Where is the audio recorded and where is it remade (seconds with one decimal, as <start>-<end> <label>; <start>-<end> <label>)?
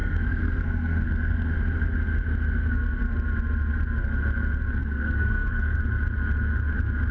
0.0-1.5 remade; 1.5-4.8 recorded; 4.8-5.8 remade; 5.8-7.1 recorded